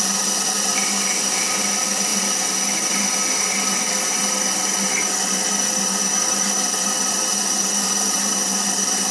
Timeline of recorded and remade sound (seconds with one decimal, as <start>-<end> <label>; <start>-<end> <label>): 0.0-9.1 recorded